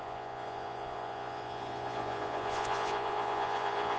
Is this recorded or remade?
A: remade